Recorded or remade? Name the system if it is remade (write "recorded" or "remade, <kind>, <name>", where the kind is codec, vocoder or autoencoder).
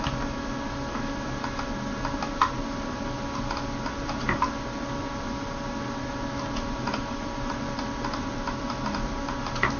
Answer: recorded